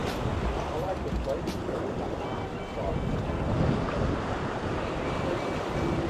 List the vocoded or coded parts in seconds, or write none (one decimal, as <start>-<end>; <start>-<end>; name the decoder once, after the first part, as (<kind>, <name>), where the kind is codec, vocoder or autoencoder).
none

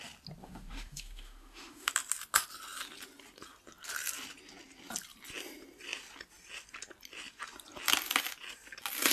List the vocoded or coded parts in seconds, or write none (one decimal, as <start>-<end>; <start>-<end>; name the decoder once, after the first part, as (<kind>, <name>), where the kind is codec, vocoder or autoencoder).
0.4-1.9 (autoencoder, DAC-VAE)

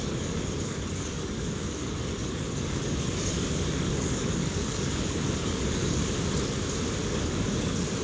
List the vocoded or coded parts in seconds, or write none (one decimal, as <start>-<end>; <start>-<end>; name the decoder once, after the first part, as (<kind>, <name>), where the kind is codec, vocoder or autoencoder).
0.0-6.0 (codec, DAC); 7.0-8.0

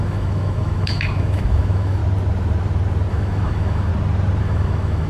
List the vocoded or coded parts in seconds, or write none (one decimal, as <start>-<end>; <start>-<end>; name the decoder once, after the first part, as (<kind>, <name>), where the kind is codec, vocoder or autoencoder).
0.0-2.0 (autoencoder, DAC-VAE); 3.1-3.9; 4.4-5.1